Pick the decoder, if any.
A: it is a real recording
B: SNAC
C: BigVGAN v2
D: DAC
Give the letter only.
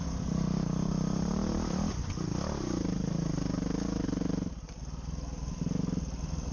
A